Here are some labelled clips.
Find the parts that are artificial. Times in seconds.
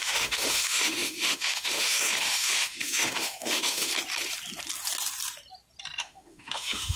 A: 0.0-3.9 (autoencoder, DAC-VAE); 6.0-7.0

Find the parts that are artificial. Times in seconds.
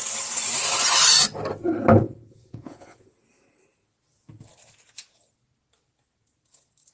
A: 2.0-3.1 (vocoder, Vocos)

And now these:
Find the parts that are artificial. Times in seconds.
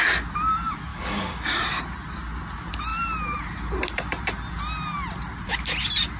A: 0.9-1.8 (codec, DAC)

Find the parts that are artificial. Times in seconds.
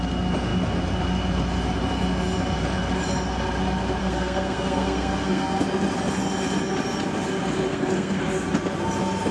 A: 4.0-5.6 (codec, SNAC); 7.7-8.2